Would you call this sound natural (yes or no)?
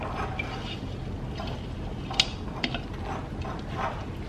yes